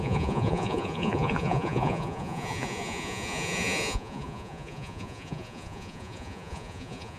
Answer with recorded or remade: remade